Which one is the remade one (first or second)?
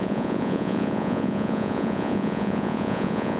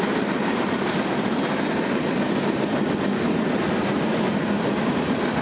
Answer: first